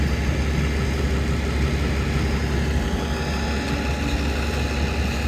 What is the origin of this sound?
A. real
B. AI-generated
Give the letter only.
A